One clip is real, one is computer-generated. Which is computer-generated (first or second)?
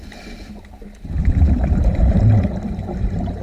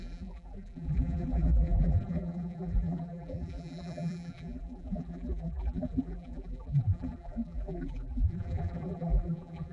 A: second